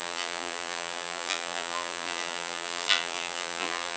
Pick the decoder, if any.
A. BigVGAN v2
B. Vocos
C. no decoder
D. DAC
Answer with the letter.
A